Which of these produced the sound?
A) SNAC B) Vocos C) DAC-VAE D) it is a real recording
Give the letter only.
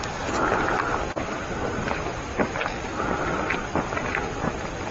D